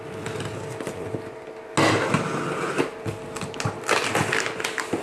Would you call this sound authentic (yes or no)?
yes